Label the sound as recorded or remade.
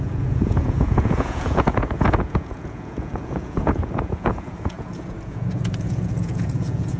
remade